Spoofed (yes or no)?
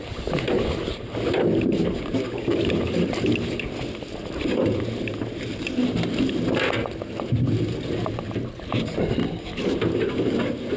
no